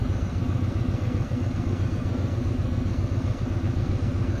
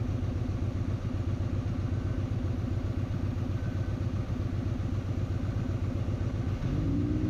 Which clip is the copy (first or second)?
first